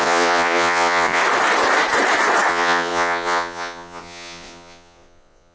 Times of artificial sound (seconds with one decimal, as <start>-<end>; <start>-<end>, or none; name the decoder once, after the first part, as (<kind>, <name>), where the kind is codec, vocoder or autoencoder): 0.0-1.2 (vocoder, Vocos); 2.5-5.5